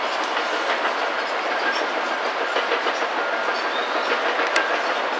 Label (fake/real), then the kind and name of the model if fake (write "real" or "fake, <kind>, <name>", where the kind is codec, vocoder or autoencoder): real